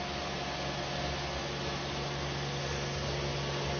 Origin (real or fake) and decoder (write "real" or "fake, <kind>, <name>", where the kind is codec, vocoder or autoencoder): real